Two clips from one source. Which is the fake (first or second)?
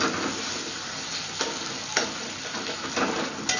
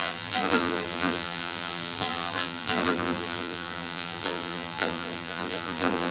second